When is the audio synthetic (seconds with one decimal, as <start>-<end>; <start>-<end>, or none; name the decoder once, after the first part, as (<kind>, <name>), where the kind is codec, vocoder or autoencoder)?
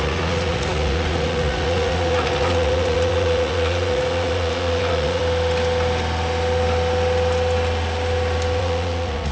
0.0-5.2 (vocoder, Vocos); 8.6-9.3